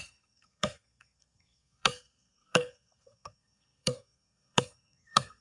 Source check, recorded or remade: remade